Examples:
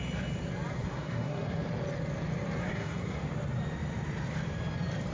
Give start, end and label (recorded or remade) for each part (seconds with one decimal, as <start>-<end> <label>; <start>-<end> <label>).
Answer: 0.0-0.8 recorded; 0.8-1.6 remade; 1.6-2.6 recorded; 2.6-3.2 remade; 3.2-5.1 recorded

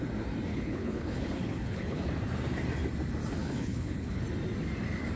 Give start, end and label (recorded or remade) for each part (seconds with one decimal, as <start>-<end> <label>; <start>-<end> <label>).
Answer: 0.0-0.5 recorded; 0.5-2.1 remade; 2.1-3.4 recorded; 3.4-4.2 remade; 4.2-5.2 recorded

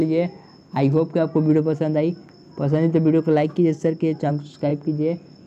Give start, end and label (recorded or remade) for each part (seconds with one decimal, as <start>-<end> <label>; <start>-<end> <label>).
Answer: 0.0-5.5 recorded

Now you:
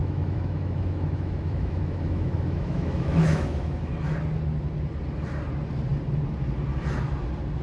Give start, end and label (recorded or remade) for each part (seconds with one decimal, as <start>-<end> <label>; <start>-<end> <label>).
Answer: 0.0-3.9 remade; 3.9-7.6 recorded

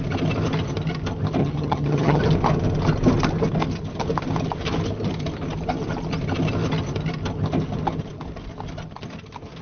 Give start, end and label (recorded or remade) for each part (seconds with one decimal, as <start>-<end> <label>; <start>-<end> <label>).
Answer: 0.0-1.4 recorded; 1.4-2.2 remade; 2.2-9.6 recorded

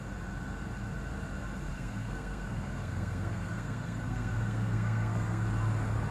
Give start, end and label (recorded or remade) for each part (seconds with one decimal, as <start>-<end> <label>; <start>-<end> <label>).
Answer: 0.0-1.7 recorded; 1.7-5.4 remade; 5.4-6.1 recorded